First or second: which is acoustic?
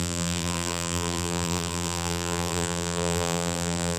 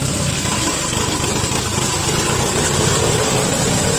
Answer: second